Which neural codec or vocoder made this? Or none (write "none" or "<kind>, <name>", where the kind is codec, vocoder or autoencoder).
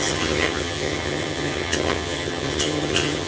vocoder, HiFi-GAN